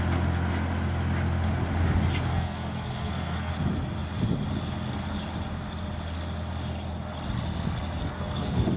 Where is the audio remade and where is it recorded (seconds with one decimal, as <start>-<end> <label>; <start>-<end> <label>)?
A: 0.0-2.3 recorded; 2.3-3.5 remade; 3.5-8.0 recorded; 8.0-8.8 remade